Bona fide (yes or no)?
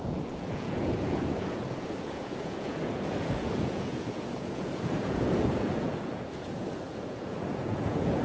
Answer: no